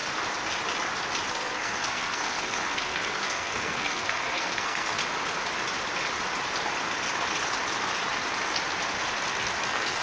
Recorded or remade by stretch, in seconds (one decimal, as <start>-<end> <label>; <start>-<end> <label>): 0.0-1.3 recorded; 1.3-5.0 remade; 5.0-9.6 recorded; 9.6-10.0 remade